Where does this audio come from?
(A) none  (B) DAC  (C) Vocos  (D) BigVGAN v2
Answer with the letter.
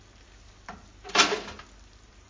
A